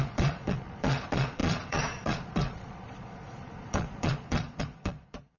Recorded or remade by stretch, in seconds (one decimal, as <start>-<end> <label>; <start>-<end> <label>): 0.0-5.4 remade

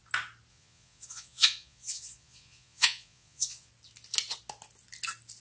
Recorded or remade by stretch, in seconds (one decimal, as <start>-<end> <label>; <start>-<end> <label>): 0.0-0.5 recorded; 0.5-3.7 remade; 3.7-5.4 recorded

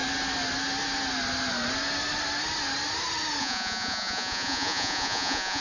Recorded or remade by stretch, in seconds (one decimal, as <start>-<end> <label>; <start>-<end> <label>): 0.0-3.4 recorded; 3.4-5.6 remade